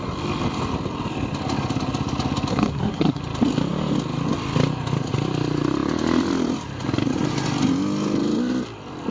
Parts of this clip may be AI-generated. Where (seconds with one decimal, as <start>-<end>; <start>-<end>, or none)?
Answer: 2.5-3.2